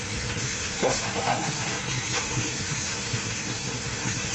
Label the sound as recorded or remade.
remade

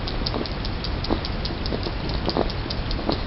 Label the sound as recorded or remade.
recorded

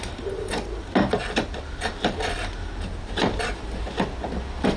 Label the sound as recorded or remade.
recorded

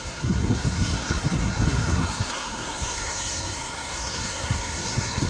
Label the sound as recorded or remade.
remade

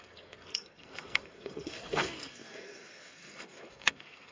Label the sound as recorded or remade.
remade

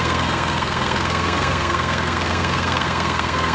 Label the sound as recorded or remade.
remade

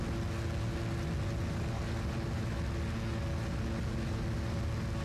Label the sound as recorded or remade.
recorded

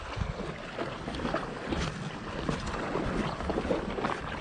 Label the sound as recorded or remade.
recorded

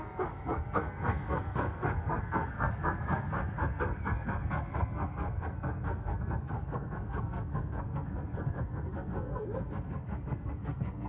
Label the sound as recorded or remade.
remade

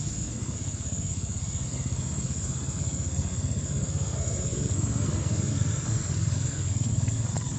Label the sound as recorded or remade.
remade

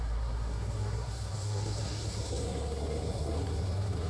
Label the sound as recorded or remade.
remade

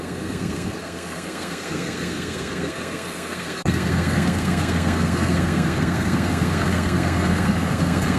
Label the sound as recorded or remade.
remade